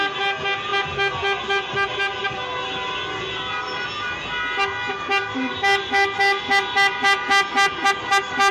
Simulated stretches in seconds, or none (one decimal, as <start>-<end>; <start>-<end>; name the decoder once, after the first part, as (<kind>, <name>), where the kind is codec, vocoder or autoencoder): none